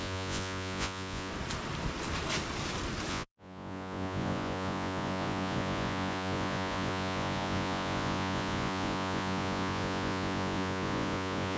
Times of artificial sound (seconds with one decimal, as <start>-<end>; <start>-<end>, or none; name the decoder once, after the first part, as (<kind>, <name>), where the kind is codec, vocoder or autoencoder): 0.0-1.3 (vocoder, Vocos); 3.1-11.6